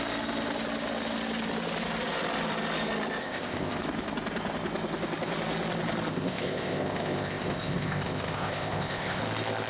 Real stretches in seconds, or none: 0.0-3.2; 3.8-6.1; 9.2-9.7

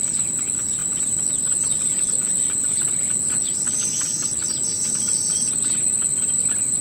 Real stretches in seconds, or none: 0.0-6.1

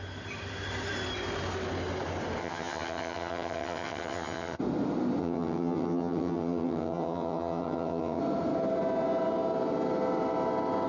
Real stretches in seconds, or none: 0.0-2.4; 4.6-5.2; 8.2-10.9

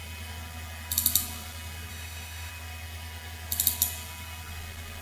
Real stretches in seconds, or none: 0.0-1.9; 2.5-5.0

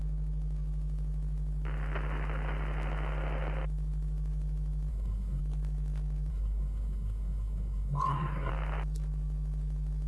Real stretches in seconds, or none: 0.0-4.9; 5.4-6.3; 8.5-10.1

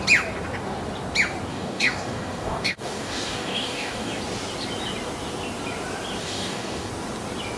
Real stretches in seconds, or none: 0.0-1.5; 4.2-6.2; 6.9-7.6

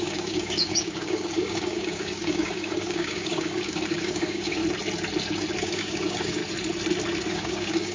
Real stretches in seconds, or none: 4.6-5.6; 6.4-7.3